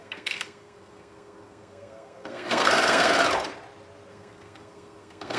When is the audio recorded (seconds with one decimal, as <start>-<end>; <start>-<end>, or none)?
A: 3.1-4.1